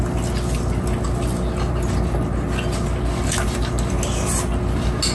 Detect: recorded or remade recorded